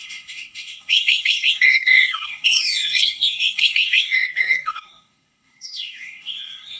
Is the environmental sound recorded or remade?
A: remade